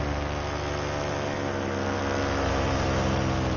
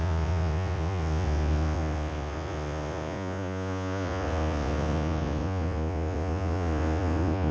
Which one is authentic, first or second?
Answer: first